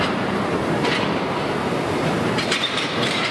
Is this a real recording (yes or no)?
no